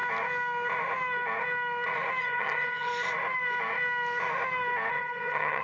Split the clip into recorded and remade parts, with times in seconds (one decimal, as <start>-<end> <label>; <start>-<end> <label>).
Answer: 0.0-2.2 recorded; 2.2-2.9 remade; 2.9-4.9 recorded; 4.9-5.6 remade